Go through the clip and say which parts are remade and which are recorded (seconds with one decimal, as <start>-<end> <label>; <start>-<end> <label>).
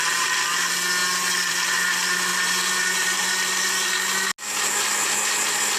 0.0-2.3 recorded; 2.3-3.3 remade; 3.3-5.8 recorded